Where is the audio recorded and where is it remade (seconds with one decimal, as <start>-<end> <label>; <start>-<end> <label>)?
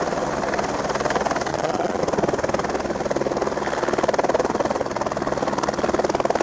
0.0-1.5 recorded; 1.5-2.0 remade; 2.0-6.4 recorded